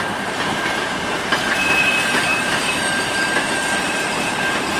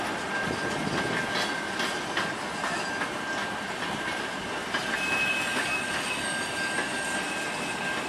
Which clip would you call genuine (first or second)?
second